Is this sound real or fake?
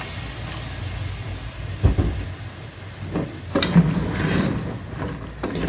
real